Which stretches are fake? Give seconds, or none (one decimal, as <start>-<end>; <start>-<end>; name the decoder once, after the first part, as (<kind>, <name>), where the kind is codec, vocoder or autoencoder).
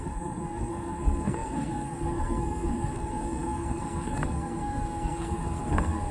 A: 0.0-6.1 (codec, SNAC)